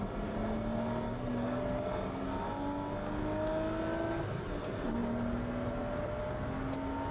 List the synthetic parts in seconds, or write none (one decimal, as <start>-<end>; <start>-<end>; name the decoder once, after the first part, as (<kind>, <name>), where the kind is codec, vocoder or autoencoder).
none